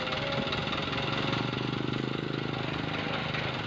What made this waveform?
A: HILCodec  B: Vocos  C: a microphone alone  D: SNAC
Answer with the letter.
C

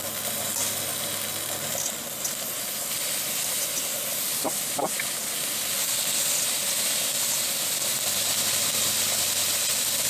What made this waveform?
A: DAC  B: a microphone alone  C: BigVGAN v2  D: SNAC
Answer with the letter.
B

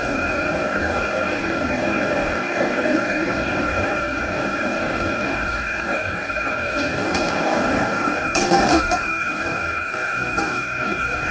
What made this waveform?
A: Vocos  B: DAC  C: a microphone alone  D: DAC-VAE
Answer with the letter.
B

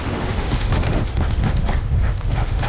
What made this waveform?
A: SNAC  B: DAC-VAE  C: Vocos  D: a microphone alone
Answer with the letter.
B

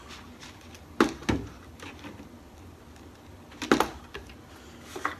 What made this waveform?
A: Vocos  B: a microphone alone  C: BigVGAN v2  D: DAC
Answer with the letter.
B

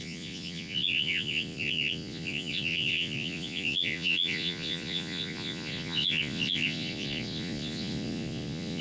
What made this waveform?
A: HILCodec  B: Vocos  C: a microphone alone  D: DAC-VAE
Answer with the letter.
B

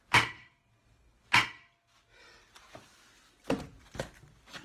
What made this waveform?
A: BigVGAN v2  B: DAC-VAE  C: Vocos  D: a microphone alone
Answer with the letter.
D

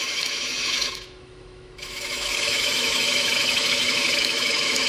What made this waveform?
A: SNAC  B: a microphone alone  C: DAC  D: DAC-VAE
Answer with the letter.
D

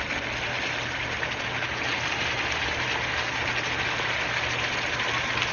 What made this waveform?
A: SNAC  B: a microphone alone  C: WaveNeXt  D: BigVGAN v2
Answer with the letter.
B